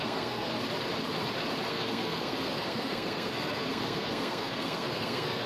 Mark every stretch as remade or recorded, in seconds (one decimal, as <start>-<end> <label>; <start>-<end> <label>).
0.0-0.5 remade; 0.5-1.7 recorded; 1.7-5.5 remade